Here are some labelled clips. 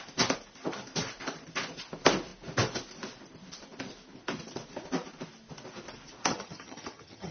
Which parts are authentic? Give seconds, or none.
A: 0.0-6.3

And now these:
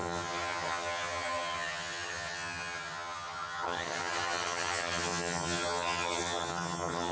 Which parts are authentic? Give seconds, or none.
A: none

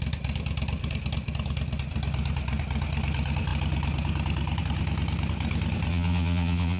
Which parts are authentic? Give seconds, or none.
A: 0.0-5.9

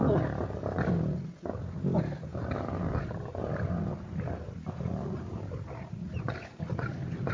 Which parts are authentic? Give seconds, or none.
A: 0.0-7.3

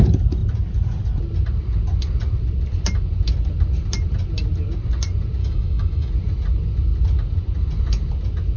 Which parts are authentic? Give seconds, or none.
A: 0.0-5.4; 6.1-8.6

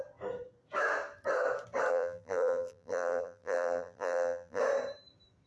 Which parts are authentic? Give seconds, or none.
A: 0.0-1.9; 4.6-5.5

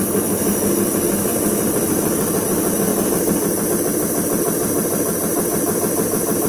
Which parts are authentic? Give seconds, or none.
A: 0.0-1.3; 1.9-2.9; 3.7-6.5